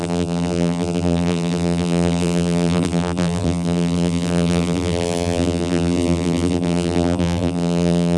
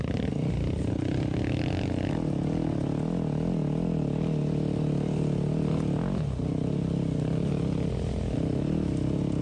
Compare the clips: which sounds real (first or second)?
second